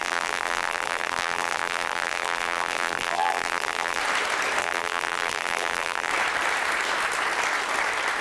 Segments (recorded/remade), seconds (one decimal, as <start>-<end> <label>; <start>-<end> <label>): 0.0-4.0 remade; 4.0-4.6 recorded; 4.6-6.1 remade; 6.1-8.2 recorded